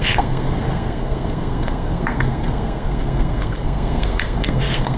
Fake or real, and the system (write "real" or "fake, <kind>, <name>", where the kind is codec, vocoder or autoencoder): fake, codec, SNAC